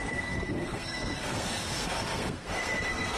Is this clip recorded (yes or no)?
no